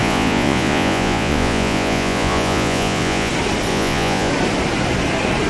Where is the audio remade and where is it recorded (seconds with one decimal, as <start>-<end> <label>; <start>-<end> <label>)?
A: 0.0-3.3 remade; 3.3-3.7 recorded; 3.7-4.3 remade; 4.3-5.5 recorded